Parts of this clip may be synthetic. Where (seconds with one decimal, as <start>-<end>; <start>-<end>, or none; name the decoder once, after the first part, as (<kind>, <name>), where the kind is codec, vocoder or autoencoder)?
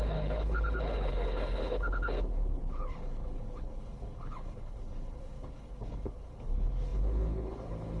0.0-8.0 (codec, HILCodec)